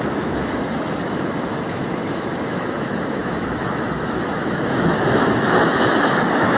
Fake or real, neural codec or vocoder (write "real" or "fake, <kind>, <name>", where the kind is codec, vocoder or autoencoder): fake, autoencoder, DAC-VAE